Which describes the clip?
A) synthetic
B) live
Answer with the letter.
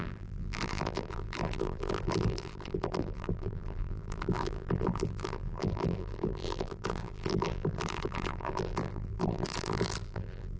A